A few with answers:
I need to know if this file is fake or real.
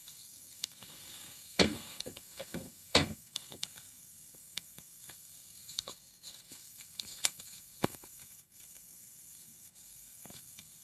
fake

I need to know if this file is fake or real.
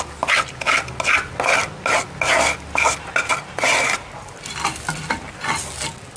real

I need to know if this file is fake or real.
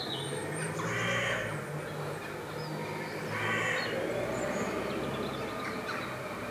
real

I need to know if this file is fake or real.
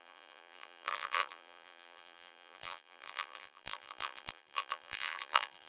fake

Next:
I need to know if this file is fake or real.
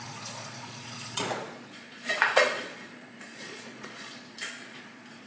fake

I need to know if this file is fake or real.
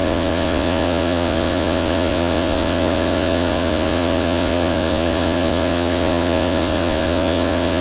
fake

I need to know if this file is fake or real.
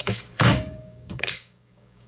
fake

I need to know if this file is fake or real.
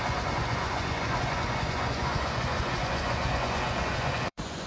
fake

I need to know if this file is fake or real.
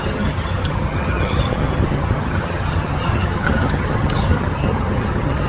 fake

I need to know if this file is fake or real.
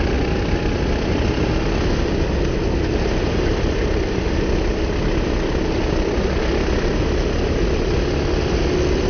real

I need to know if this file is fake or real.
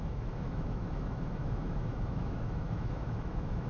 fake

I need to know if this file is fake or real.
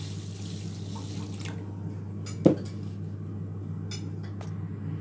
real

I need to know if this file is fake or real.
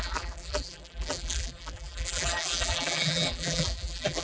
fake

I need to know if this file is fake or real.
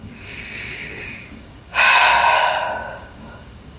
fake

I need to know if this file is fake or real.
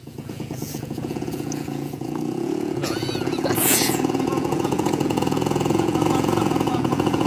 fake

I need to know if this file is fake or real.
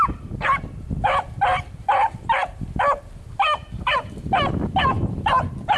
real